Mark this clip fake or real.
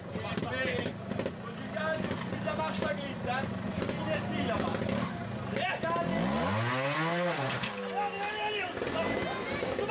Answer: real